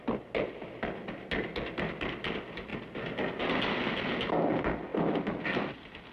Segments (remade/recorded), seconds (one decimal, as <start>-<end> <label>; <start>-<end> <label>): 0.0-6.1 recorded